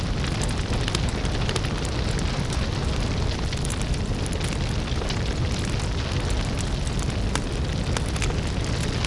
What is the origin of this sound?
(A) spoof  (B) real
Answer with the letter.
B